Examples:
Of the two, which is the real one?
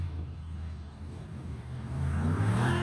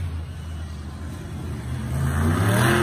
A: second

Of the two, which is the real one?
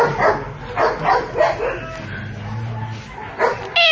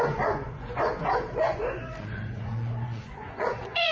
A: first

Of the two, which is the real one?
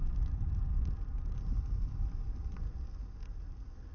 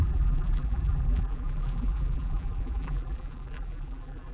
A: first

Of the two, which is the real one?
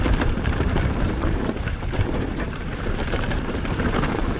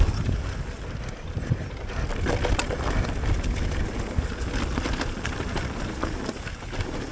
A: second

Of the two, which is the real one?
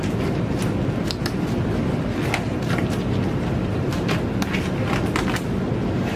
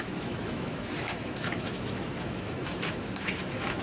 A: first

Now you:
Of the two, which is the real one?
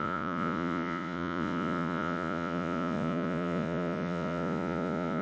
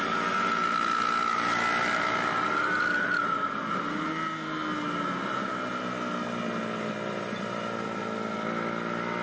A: second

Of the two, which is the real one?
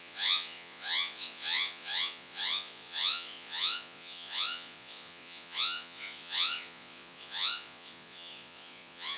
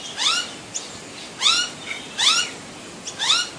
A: second